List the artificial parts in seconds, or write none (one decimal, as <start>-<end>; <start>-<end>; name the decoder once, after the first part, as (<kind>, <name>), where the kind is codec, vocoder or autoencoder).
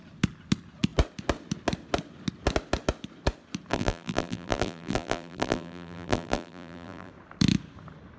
3.7-7.1 (vocoder, BigVGAN v2)